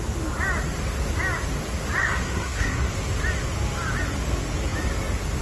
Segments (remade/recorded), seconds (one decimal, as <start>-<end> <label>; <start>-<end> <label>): 0.0-2.0 recorded; 2.0-2.9 remade; 2.9-5.4 recorded